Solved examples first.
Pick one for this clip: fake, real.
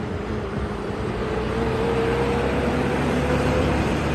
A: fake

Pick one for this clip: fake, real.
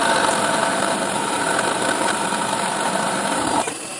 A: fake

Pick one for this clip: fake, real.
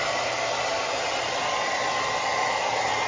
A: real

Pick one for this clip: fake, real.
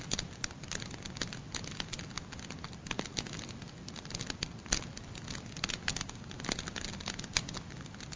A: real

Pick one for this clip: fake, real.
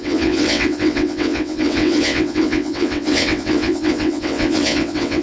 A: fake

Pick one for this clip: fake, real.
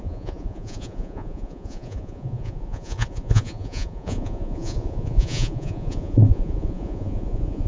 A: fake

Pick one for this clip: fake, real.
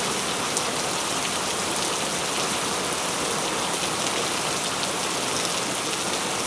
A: real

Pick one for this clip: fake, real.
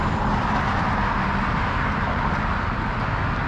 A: real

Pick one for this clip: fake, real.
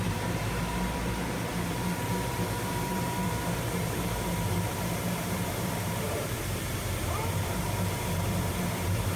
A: fake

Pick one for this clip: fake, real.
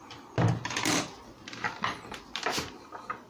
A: real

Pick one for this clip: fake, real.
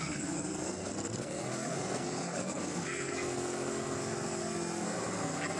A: fake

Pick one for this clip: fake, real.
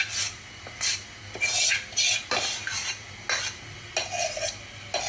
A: real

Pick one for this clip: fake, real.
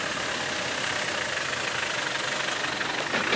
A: real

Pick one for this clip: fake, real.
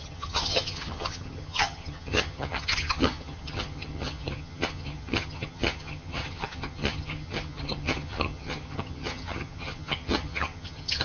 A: fake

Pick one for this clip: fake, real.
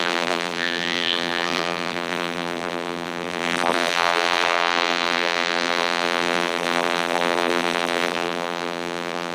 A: fake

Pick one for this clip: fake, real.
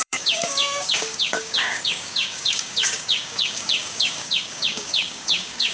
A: fake